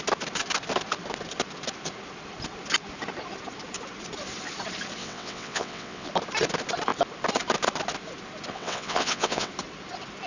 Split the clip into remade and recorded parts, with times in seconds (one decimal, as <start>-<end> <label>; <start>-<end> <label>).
0.0-5.0 recorded; 5.0-6.1 remade; 6.1-8.5 recorded; 8.5-9.5 remade; 9.5-10.3 recorded